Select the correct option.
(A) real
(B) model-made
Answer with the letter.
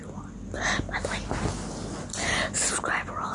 A